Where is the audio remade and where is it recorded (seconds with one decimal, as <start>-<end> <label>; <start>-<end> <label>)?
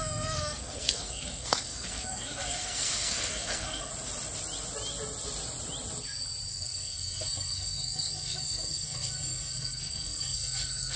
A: 0.0-3.9 remade; 3.9-6.5 recorded; 6.5-11.0 remade